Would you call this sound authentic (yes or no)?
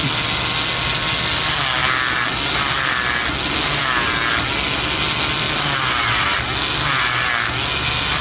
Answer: yes